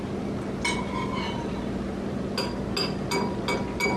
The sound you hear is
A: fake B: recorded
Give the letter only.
B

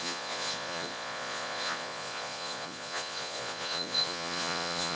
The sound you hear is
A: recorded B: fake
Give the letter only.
B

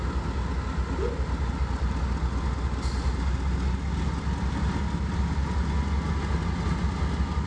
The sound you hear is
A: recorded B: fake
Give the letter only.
A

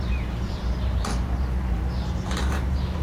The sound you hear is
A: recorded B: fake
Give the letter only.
B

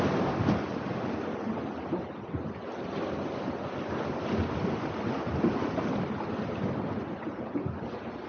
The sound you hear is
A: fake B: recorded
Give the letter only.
B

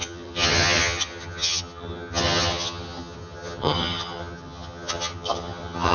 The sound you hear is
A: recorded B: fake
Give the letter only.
B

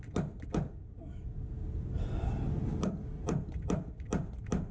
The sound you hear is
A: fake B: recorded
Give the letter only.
B